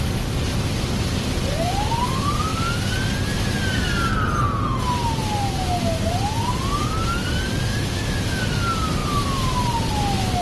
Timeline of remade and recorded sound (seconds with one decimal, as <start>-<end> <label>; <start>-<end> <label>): 0.0-7.7 recorded; 7.7-8.4 remade; 8.4-10.4 recorded